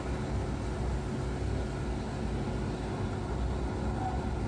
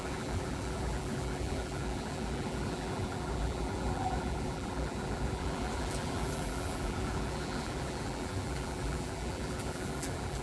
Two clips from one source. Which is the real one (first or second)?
first